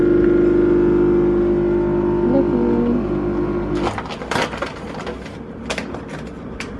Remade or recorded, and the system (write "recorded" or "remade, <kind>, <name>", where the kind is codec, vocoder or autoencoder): recorded